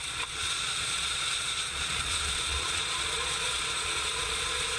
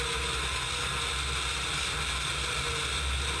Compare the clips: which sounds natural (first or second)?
second